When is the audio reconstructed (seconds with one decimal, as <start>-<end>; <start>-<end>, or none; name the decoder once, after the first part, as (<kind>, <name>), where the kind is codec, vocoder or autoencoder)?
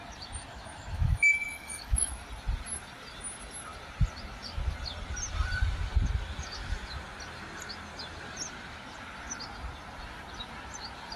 0.5-2.2 (autoencoder, DAC-VAE)